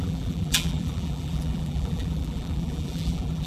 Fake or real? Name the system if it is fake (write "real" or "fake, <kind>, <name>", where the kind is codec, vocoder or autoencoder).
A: fake, vocoder, BigVGAN v2